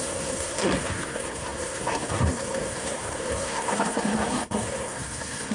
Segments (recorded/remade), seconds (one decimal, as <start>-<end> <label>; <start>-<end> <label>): 0.0-5.5 remade